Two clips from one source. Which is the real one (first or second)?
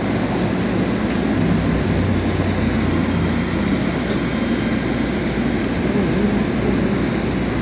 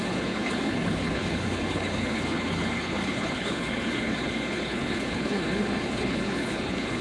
first